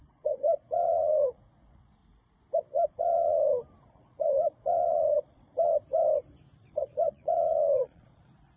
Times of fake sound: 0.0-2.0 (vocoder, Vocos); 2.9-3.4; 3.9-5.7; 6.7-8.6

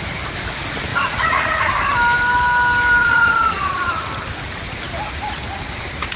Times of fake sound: 0.9-1.7 (vocoder, Vocos); 3.0-4.1

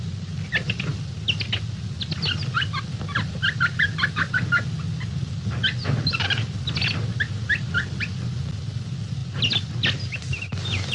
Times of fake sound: none

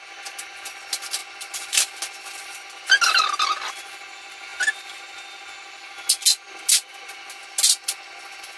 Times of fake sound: none

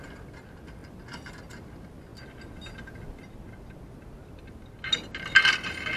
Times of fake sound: none

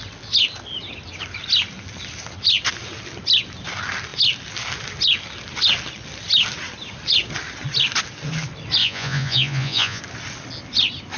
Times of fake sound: 8.8-10.0 (vocoder, Vocos)